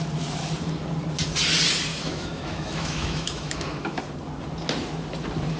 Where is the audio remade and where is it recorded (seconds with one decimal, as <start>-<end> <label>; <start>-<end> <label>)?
0.0-1.9 recorded; 1.9-4.0 remade; 4.0-5.6 recorded